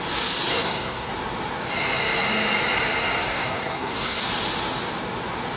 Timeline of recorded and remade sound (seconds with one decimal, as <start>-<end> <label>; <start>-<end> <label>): 0.0-0.5 recorded; 0.5-1.1 remade; 1.1-3.2 recorded; 3.2-4.2 remade; 4.2-5.6 recorded